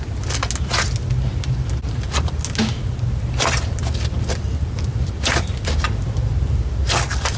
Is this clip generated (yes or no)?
no